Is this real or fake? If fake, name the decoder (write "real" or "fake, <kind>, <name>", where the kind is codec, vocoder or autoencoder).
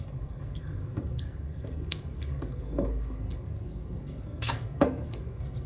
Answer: fake, codec, SNAC